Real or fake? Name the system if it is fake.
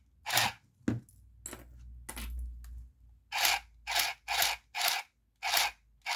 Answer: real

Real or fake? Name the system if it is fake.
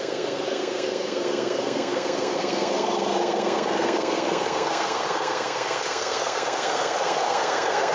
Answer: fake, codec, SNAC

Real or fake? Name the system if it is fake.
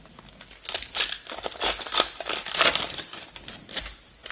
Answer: real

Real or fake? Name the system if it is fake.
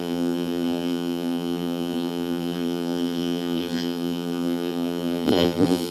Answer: fake, vocoder, BigVGAN v2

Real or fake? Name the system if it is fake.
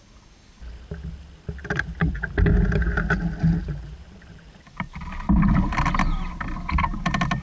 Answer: real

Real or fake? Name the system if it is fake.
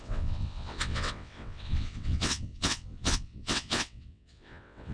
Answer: fake, vocoder, WaveNeXt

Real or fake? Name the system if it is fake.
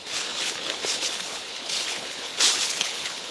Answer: fake, codec, HILCodec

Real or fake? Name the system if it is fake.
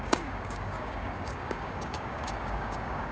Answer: fake, codec, DAC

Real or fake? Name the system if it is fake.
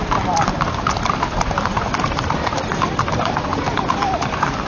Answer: fake, vocoder, BigVGAN v2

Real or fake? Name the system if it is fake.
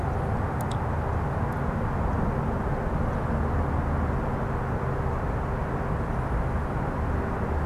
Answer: real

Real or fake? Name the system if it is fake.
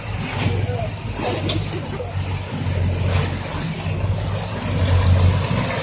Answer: real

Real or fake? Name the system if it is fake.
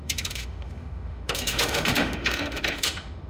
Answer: fake, autoencoder, DAC-VAE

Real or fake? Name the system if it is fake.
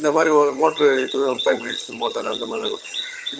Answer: fake, vocoder, HiFi-GAN